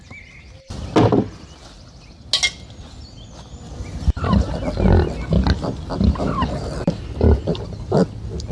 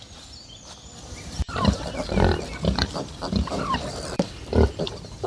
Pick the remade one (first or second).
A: second